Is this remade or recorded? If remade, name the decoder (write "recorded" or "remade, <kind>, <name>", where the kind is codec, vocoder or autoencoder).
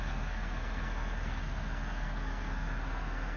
remade, codec, SNAC